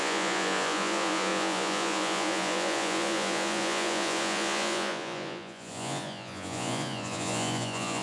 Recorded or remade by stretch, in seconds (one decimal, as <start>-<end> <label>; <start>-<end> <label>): 0.0-8.0 remade